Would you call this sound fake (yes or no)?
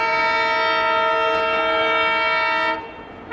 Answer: no